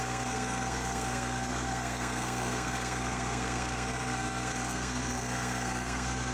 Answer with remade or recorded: remade